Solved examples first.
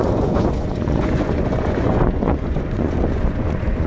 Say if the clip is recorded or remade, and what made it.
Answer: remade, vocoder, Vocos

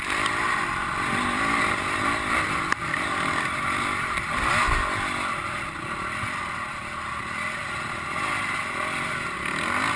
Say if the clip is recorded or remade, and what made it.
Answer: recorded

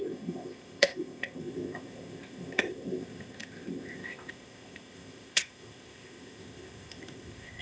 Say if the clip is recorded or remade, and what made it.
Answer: remade, codec, ZipCodec